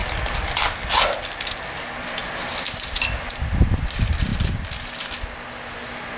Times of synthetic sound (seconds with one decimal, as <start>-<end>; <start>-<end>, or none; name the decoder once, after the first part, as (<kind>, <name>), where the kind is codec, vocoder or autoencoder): none

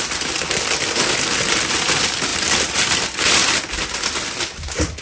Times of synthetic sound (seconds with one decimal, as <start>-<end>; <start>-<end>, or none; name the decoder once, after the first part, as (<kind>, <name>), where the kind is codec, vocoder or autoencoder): none